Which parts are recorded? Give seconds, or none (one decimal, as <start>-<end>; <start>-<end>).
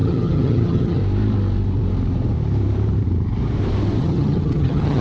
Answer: 1.0-4.0